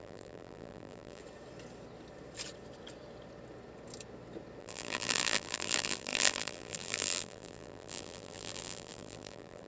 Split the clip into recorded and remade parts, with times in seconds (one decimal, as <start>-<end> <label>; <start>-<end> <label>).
0.0-1.2 remade; 1.2-4.6 recorded; 4.6-9.7 remade